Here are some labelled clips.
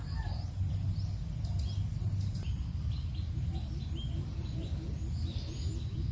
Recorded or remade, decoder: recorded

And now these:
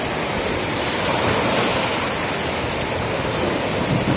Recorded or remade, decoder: recorded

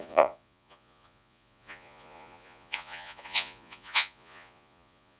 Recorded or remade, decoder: remade, vocoder, Vocos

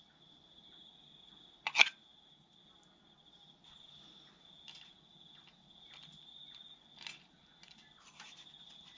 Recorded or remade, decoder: recorded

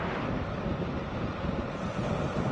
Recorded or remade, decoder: recorded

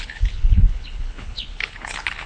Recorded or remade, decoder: remade, codec, HILCodec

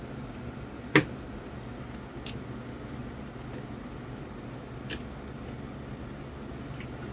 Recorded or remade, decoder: recorded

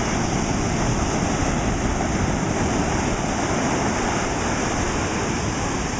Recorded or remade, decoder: recorded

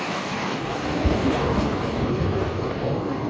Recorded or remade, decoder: remade, codec, DAC